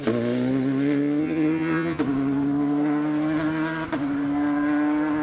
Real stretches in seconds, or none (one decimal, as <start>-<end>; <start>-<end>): 0.0-1.2; 2.0-5.2